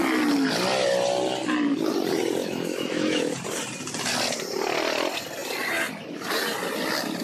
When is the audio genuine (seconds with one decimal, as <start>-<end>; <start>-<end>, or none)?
0.0-2.4; 3.3-7.2